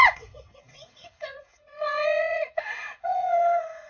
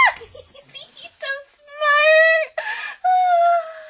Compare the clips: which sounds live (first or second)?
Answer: second